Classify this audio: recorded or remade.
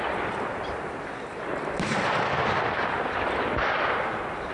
remade